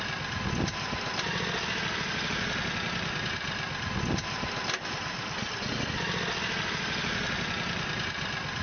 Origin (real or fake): real